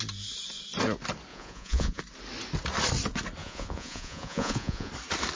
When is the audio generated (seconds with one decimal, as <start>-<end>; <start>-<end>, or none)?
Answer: 1.3-2.0; 3.4-4.9